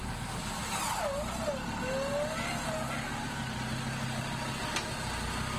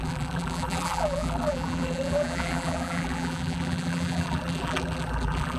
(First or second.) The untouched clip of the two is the first